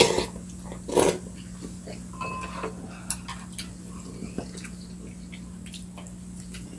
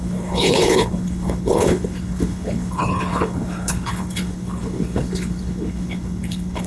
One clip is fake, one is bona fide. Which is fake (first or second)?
second